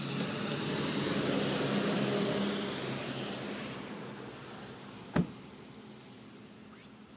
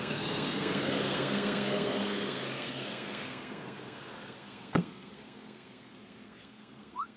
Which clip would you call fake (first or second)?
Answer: second